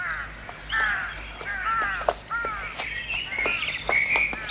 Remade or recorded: recorded